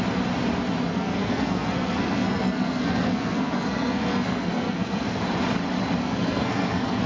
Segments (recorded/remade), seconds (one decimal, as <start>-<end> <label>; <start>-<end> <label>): 0.0-0.9 recorded; 0.9-5.2 remade; 5.2-6.0 recorded; 6.0-7.1 remade